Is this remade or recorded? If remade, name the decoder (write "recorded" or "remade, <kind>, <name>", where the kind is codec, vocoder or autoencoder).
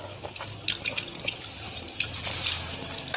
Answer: recorded